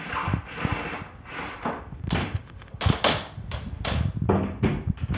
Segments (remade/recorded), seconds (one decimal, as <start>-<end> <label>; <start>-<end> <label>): 0.0-2.2 recorded; 2.2-2.8 remade; 2.8-5.2 recorded